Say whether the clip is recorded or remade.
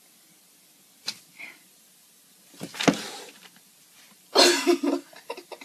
recorded